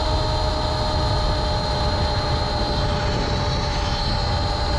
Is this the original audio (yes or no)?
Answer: yes